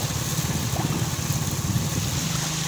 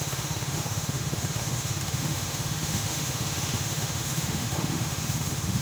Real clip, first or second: first